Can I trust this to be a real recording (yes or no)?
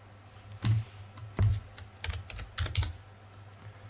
yes